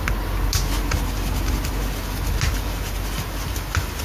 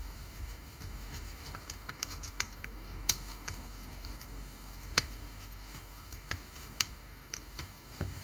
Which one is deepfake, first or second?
second